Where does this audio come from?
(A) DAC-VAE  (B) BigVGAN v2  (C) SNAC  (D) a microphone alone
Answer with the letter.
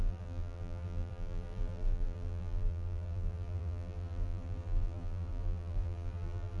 B